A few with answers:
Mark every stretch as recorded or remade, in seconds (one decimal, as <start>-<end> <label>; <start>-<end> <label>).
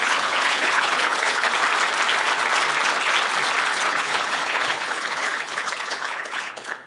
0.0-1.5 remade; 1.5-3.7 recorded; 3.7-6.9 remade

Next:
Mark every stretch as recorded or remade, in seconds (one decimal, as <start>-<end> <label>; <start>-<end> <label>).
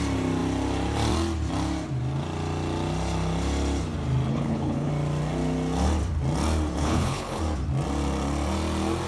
0.0-4.3 recorded; 4.3-4.9 remade; 4.9-6.8 recorded; 6.8-7.4 remade; 7.4-9.1 recorded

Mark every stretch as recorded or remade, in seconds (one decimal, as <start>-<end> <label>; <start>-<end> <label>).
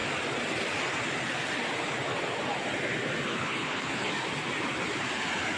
0.0-3.3 recorded; 3.3-4.1 remade; 4.1-5.6 recorded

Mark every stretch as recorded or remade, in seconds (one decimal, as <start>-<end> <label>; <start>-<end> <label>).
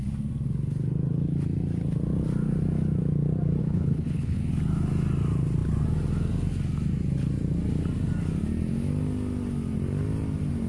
0.0-3.6 recorded; 3.6-4.4 remade; 4.4-10.7 recorded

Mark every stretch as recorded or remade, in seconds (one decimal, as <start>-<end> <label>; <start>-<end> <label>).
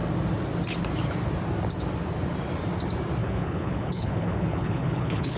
0.0-3.2 recorded; 3.2-5.4 remade